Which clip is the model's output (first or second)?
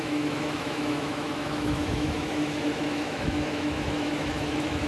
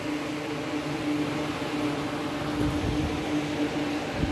first